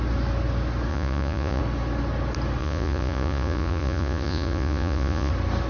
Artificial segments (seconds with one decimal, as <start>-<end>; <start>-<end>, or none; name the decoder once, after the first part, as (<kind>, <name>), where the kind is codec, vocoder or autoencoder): 0.9-1.6 (vocoder, Vocos); 2.6-5.3